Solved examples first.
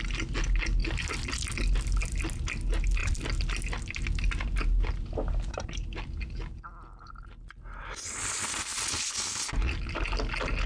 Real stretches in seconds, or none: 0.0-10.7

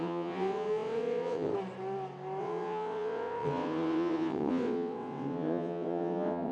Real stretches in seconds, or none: 1.5-2.4

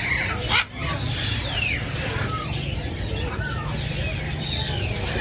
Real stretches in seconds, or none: 0.0-5.2

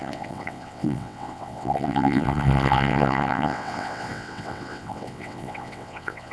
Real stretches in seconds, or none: none

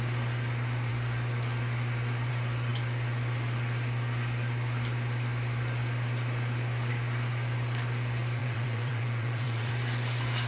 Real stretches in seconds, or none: 0.0-8.4; 9.7-10.5

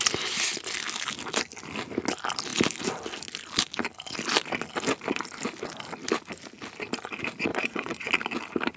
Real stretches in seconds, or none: 0.0-7.5; 8.1-8.8

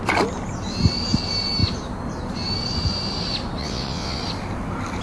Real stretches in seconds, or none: 0.0-3.6; 4.2-5.0

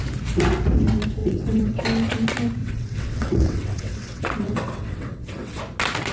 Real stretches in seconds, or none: 0.0-1.2; 1.8-2.6; 5.6-6.1